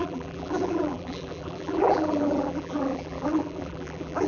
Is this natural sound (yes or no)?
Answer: no